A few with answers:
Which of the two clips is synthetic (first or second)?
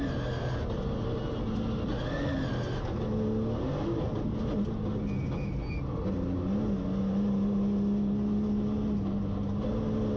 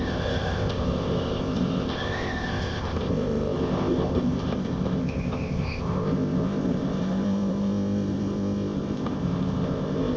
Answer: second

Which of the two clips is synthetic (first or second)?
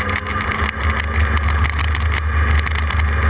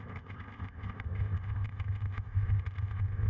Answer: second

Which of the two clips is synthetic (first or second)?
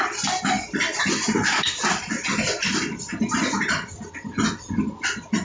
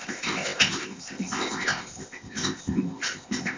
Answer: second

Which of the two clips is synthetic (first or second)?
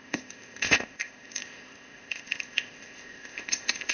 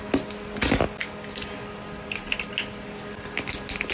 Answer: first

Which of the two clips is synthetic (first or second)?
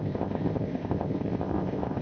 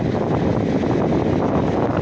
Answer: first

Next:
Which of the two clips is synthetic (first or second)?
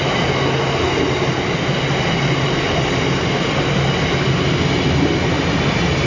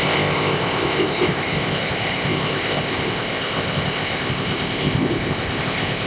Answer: second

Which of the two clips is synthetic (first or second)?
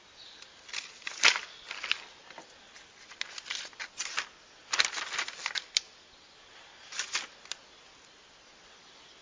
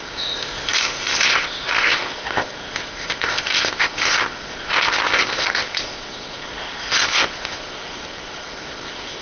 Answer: second